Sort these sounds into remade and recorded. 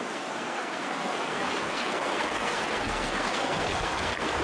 remade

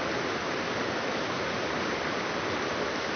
recorded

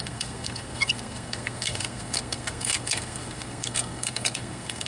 remade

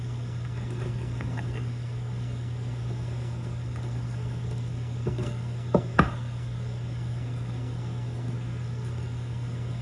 remade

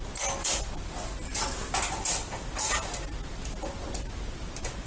recorded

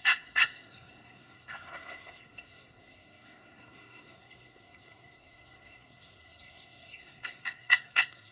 remade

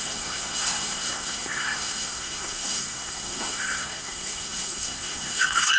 remade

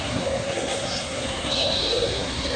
remade